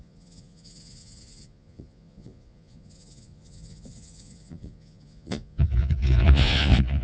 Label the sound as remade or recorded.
remade